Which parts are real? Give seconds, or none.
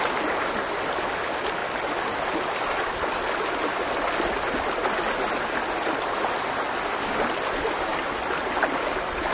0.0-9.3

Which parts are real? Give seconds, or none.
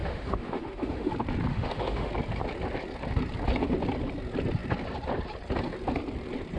1.1-1.5; 2.1-6.6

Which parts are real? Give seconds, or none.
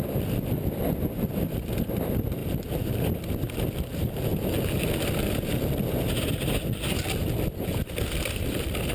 0.0-2.4; 3.0-8.9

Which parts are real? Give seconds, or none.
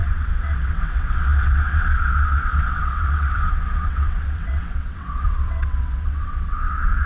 none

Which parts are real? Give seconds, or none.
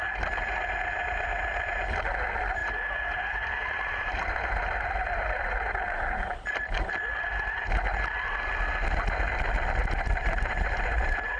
0.0-2.6; 6.9-9.8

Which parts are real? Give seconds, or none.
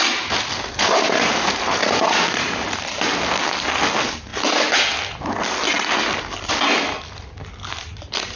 0.0-8.3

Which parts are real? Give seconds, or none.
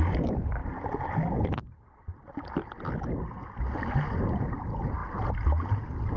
0.0-6.2